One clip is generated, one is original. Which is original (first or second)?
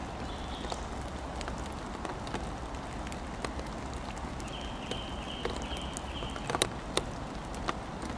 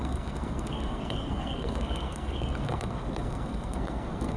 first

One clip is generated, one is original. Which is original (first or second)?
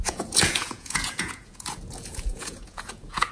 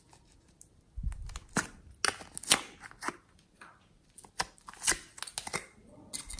second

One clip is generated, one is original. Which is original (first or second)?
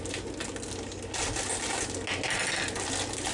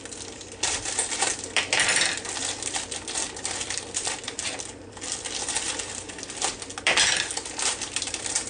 first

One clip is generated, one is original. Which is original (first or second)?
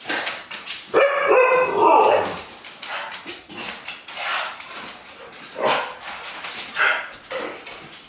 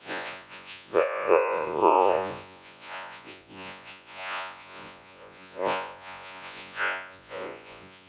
first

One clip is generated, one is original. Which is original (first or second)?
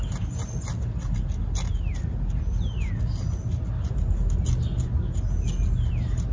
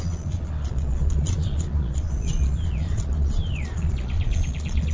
first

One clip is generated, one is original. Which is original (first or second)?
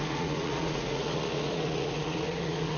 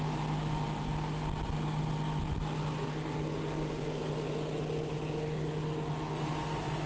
second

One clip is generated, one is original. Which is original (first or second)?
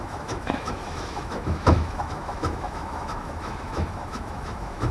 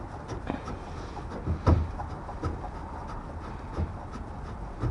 second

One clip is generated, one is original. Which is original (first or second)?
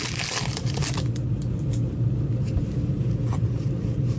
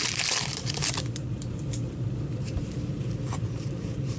first